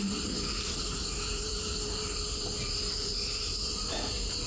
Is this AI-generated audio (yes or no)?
yes